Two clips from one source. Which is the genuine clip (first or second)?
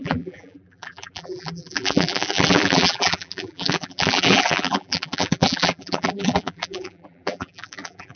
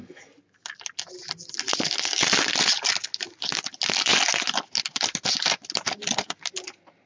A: second